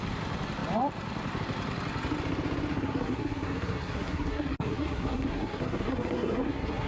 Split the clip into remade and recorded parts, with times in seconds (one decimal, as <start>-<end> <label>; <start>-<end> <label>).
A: 0.0-2.7 recorded; 2.7-6.9 remade